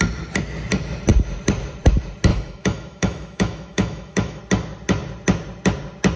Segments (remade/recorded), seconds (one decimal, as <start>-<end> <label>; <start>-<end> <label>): 0.0-2.3 recorded; 2.3-4.4 remade; 4.4-6.2 recorded